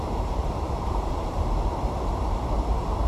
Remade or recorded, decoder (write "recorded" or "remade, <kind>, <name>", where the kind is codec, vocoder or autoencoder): remade, vocoder, BigVGAN v2